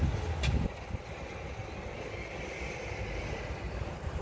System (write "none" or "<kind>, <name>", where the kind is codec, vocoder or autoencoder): none